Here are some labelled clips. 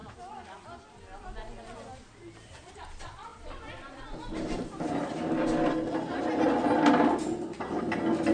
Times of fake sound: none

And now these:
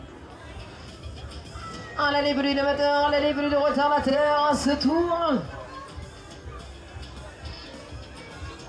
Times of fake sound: 4.1-4.9

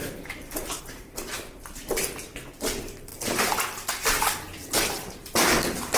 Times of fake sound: 0.0-0.8

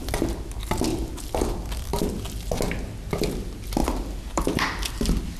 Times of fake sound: 0.9-2.1; 3.8-5.4

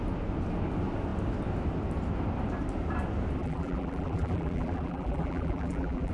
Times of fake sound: 3.4-6.1

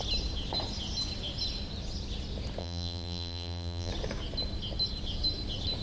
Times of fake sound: 2.6-3.9

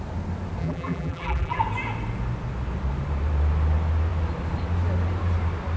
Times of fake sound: 0.6-1.6